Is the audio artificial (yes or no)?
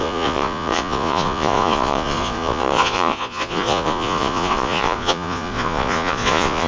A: yes